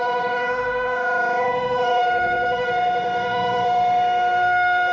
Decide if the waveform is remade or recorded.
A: remade